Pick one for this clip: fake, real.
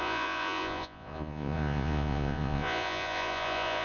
fake